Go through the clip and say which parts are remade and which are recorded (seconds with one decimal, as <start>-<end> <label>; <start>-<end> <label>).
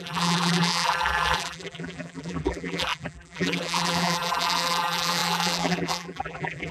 0.0-6.7 remade